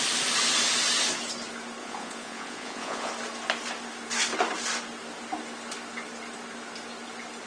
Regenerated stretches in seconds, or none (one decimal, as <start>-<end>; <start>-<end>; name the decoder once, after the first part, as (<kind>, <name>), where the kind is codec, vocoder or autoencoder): 1.8-3.1 (vocoder, Vocos)